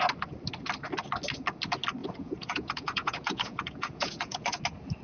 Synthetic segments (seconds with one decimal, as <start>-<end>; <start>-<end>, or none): 2.0-4.6